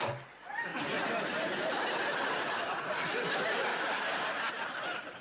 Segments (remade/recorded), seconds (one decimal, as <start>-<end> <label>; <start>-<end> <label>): 0.0-3.7 recorded; 3.7-4.5 remade; 4.5-5.2 recorded